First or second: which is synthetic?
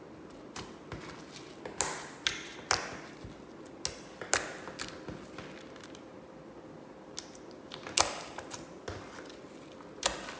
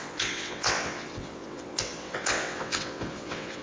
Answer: second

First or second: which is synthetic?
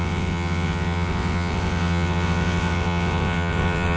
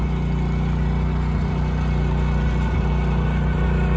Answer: first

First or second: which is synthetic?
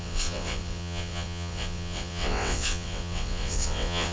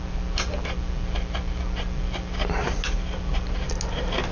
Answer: first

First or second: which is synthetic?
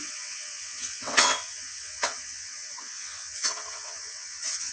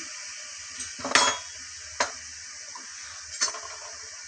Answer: first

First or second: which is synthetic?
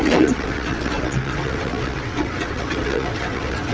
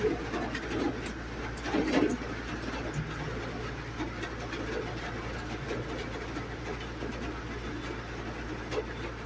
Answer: first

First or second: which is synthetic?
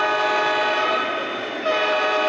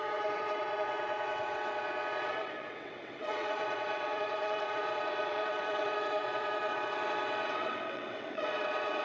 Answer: second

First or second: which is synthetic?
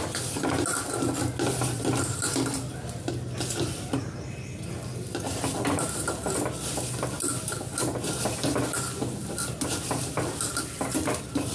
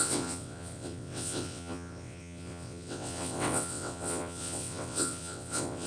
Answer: second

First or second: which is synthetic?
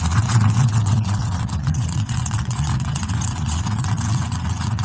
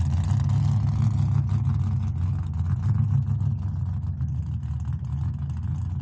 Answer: first